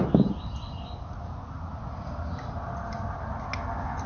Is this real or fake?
real